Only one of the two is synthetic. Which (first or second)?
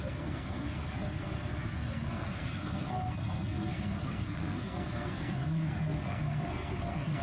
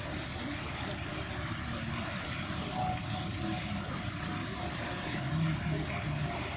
first